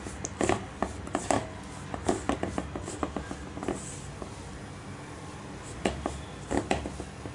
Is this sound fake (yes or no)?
no